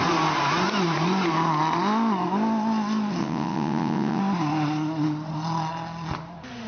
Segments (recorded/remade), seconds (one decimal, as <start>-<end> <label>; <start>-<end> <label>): 0.0-3.2 recorded; 3.2-4.2 remade; 4.2-6.7 recorded